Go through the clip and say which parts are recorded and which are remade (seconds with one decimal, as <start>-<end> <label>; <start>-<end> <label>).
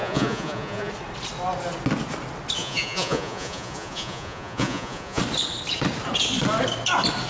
0.0-0.9 remade; 0.9-2.6 recorded; 2.6-5.2 remade; 5.2-7.3 recorded